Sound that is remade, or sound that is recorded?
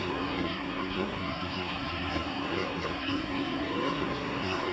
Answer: remade